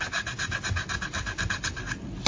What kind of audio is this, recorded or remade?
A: recorded